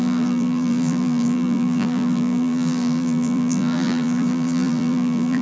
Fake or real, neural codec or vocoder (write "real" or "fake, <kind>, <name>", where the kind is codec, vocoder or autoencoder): fake, vocoder, BigVGAN v2